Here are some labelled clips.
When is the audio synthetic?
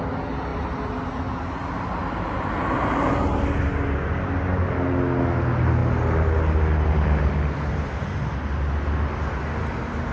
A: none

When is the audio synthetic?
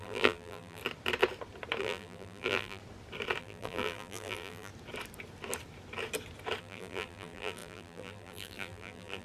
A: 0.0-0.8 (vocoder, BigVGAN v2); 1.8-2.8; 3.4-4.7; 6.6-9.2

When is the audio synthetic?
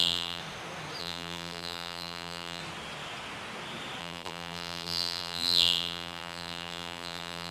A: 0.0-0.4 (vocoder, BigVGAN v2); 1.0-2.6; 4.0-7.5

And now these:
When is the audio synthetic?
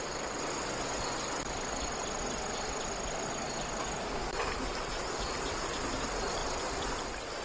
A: none